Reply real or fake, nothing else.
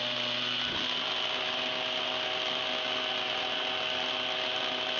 real